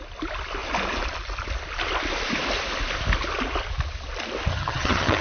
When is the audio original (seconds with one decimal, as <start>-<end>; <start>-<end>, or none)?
0.0-4.5